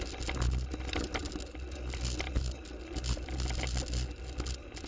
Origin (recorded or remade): recorded